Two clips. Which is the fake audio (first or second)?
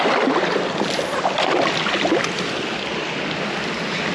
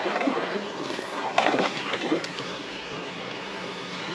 second